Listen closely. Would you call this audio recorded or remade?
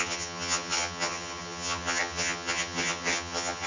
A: remade